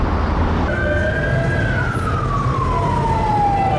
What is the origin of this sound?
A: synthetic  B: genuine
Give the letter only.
B